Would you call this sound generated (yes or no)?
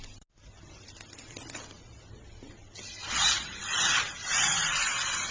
no